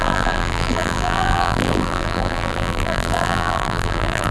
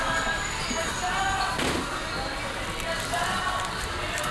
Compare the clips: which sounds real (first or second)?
second